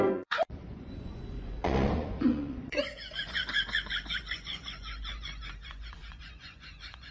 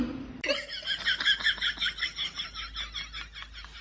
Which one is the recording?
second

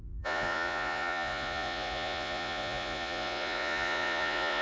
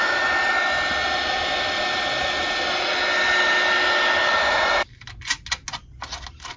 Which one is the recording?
second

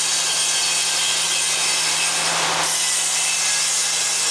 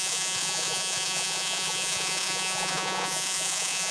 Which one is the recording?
first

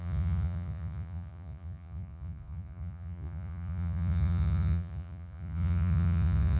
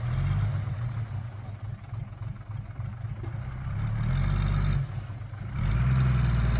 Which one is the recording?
second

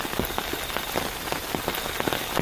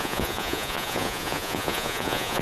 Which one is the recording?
first